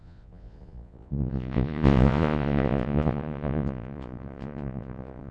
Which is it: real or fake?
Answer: fake